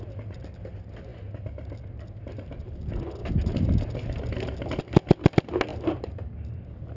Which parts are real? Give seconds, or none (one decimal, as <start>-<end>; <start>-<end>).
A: 0.0-5.7